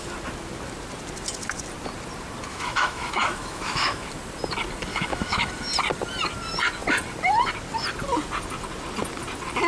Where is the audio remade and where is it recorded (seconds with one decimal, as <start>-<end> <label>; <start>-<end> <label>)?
0.0-2.5 recorded; 2.5-4.1 remade; 4.1-4.9 recorded; 4.9-5.5 remade; 5.5-9.7 recorded